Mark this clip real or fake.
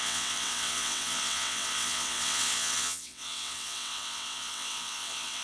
fake